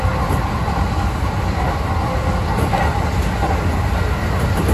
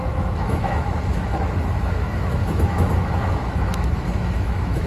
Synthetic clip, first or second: second